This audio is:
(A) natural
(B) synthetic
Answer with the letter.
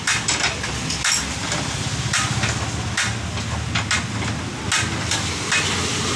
A